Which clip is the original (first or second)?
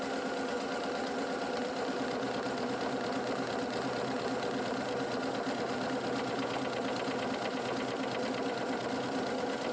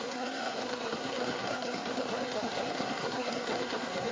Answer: first